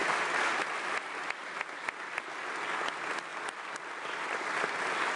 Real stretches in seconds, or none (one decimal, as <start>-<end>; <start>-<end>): 0.0-5.2